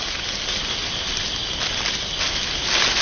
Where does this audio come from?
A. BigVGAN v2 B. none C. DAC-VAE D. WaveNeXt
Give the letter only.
B